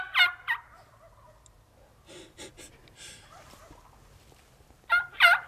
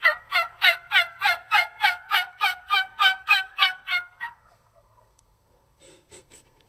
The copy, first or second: second